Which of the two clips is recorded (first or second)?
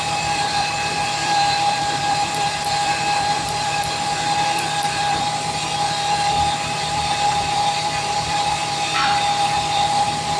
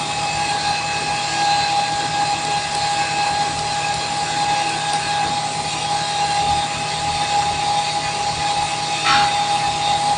second